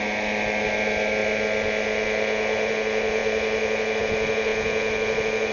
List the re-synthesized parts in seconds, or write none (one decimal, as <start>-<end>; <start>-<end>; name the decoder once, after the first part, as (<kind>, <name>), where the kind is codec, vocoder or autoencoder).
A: none